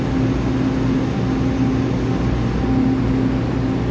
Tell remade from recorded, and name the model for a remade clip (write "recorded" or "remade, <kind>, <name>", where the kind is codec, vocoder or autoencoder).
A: recorded